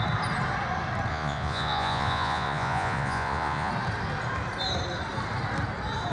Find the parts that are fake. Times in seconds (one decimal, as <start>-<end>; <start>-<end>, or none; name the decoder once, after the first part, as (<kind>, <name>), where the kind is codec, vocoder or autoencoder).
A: 1.1-3.7 (vocoder, Vocos)